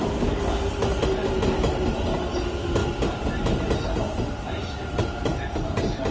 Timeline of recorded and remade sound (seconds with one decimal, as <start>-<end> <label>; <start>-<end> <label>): 0.0-6.1 recorded